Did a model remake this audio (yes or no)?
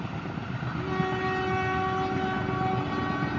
no